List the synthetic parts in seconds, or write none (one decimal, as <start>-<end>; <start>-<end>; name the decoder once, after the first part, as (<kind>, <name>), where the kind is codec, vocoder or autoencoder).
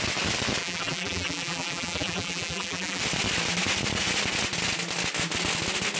0.6-3.0 (vocoder, BigVGAN v2)